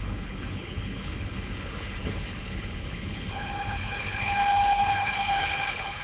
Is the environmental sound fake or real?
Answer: fake